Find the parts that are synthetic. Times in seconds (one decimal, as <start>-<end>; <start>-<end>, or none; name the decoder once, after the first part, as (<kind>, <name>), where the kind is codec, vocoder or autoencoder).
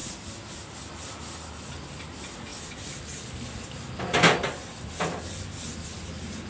none